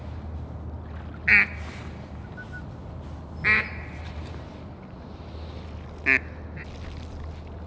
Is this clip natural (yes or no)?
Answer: yes